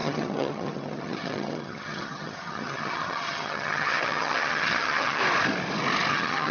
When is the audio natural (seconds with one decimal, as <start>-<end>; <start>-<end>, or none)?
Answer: 5.2-6.1